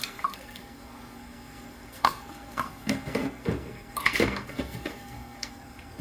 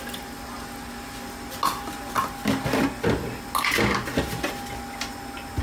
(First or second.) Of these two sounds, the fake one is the first